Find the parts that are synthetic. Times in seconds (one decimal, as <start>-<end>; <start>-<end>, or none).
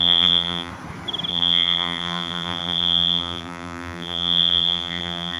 0.0-0.7; 1.3-5.4